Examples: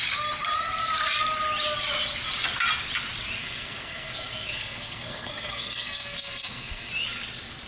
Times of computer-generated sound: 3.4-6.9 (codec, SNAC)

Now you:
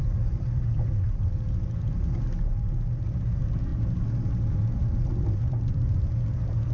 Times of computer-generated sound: none

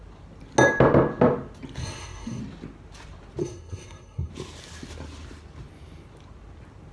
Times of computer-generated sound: 1.8-2.4 (codec, SNAC); 3.4-4.3

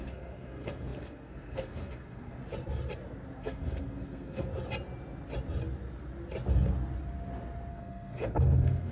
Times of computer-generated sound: 0.0-2.4 (codec, SNAC); 3.4-4.5; 7.7-8.9

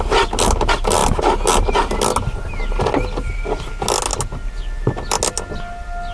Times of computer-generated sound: none

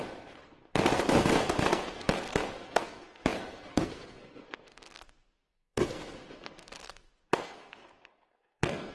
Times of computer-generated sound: 0.0-8.9 (codec, SNAC)

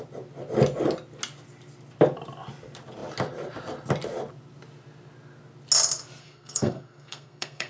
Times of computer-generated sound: 6.2-7.7 (codec, SNAC)